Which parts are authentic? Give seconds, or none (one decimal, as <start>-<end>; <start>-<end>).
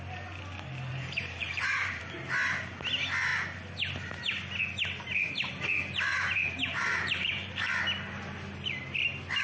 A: 0.0-0.9; 2.0-6.1; 7.7-9.4